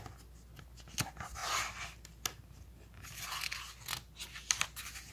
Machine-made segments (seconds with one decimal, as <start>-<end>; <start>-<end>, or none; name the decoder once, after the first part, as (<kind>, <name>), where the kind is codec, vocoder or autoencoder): none